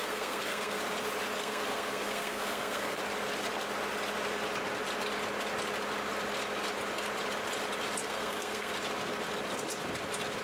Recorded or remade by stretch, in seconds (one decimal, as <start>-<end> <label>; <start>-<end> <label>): 0.0-0.8 remade; 0.8-1.4 recorded; 1.4-3.0 remade; 3.0-8.0 recorded; 8.0-8.7 remade; 8.7-10.4 recorded